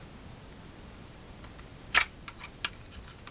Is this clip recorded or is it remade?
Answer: recorded